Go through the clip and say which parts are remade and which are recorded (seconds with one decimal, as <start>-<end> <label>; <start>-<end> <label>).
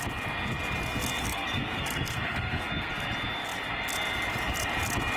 0.0-1.2 recorded; 1.2-2.9 remade; 2.9-5.2 recorded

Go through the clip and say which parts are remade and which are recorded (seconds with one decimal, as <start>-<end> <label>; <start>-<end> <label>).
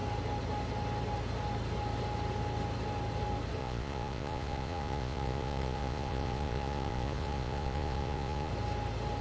0.0-3.6 recorded; 3.6-8.5 remade; 8.5-9.2 recorded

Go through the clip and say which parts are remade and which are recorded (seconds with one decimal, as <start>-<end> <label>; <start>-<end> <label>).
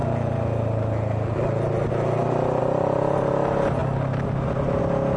0.0-5.2 recorded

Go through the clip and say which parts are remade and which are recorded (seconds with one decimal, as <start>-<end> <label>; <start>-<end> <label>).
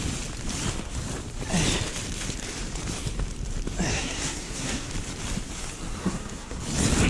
0.0-3.9 recorded; 3.9-4.9 remade; 4.9-6.0 recorded; 6.0-6.6 remade; 6.6-7.1 recorded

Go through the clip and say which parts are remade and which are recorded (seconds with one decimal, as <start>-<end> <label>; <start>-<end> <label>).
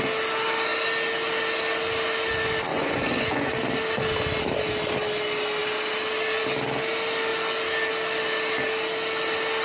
0.0-2.7 recorded; 2.7-3.5 remade; 3.5-9.6 recorded